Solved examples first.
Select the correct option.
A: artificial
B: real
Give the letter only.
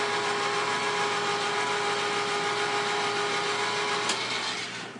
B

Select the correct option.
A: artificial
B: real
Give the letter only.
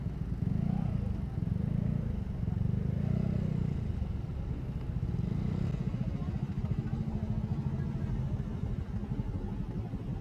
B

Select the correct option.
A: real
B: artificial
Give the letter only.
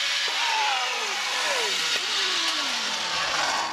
A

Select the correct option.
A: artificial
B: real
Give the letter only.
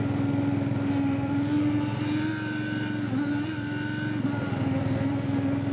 B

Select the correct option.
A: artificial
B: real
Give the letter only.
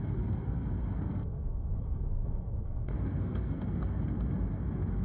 A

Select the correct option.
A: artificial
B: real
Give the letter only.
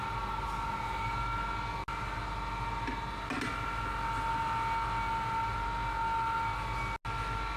B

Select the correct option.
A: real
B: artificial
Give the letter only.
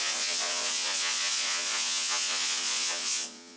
B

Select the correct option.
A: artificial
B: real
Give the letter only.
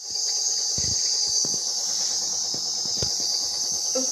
B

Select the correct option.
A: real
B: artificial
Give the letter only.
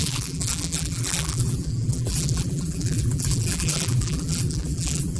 B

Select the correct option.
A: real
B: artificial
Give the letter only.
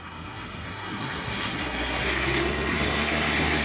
B